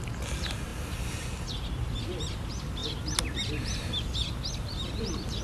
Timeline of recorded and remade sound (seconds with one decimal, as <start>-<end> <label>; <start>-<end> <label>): 0.0-5.4 recorded